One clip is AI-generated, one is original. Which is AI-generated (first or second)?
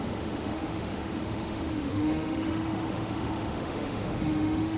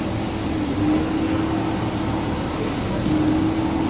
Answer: first